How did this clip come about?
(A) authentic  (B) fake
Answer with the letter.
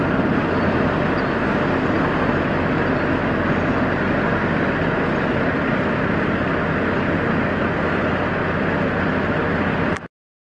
A